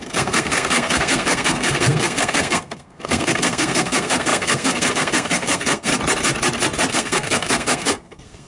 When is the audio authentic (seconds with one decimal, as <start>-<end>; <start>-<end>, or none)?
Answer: 5.9-6.9